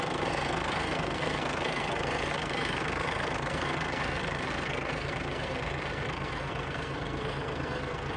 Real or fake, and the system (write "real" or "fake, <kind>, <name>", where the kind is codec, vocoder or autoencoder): fake, codec, SNAC